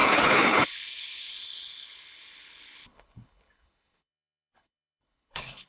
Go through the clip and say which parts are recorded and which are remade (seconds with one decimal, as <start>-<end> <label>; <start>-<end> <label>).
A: 0.0-5.7 remade